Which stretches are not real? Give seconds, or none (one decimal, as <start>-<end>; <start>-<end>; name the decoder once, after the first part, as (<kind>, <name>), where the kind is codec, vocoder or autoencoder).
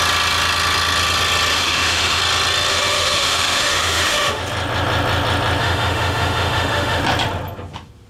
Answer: 1.5-2.2 (autoencoder, DAC-VAE); 2.7-4.4; 5.6-7.0